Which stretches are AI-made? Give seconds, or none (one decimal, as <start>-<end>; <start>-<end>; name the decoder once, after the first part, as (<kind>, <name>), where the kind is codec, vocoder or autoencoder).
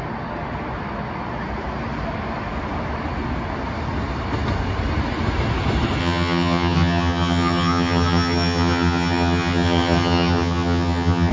6.0-11.3 (vocoder, HiFi-GAN)